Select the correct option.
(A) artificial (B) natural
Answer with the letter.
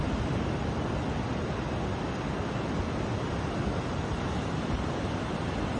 B